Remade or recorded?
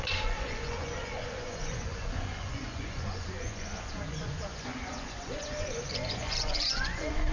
remade